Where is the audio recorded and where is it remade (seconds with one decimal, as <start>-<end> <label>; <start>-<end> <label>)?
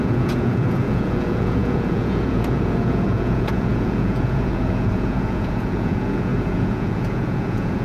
0.0-7.8 remade